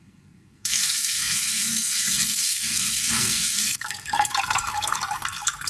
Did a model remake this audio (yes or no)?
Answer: yes